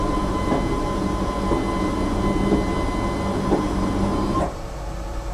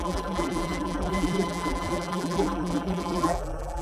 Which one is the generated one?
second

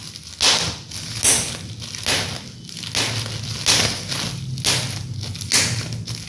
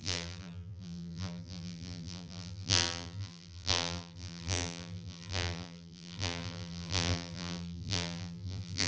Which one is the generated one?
second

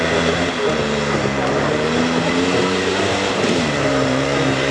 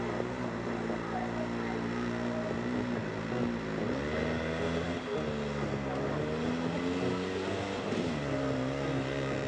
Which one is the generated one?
first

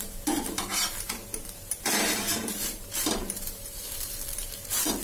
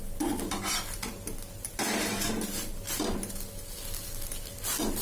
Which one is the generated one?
first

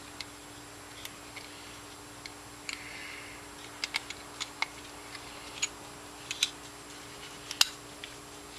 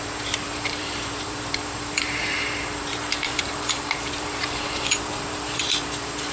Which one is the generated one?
second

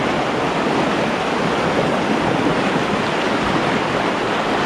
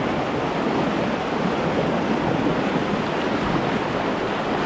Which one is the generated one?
first